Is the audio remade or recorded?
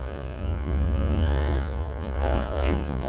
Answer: remade